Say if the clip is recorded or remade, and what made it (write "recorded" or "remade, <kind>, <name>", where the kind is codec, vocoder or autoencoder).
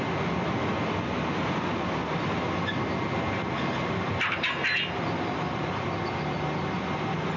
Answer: recorded